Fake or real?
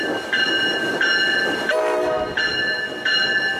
real